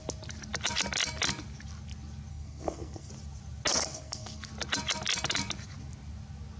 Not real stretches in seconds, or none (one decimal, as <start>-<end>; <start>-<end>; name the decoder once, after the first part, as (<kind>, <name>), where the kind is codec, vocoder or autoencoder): 2.3-3.1 (codec, SNAC); 3.8-4.5